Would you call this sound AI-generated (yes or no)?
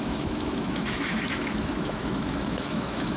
yes